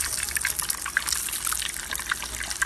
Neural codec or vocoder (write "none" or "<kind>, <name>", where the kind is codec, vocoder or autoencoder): none